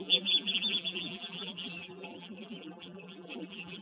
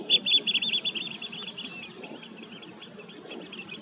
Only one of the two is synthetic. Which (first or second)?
first